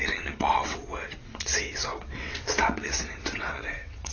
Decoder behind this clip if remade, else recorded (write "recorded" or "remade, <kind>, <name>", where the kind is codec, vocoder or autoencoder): remade, vocoder, WaveNeXt